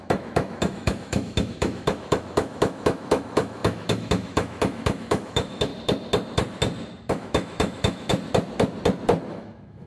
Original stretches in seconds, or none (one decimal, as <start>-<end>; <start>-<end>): 5.7-7.1; 8.1-9.3